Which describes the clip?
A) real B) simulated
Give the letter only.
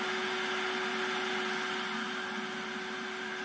A